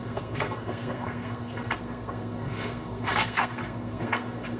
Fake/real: fake